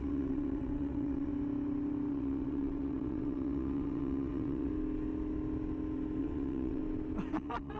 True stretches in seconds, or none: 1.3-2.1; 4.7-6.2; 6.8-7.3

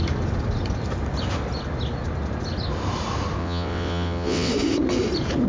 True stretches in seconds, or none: 0.0-3.4; 4.5-5.5

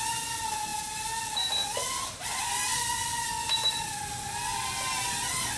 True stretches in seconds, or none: 0.0-5.6

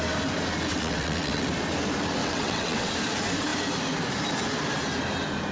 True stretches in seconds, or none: 0.0-0.7; 1.5-2.2; 2.9-5.5